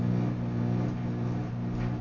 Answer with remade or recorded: recorded